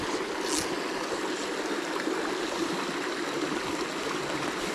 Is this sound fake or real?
real